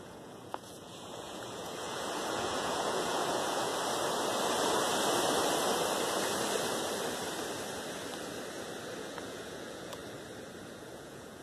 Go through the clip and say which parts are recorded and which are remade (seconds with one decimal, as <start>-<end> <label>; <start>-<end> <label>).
0.0-3.7 remade; 3.7-9.0 recorded; 9.0-10.0 remade; 10.0-10.7 recorded; 10.7-11.4 remade